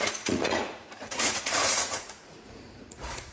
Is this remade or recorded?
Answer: remade